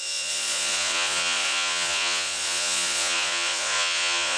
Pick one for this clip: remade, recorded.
remade